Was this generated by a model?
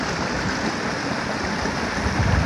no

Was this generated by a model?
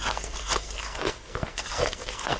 yes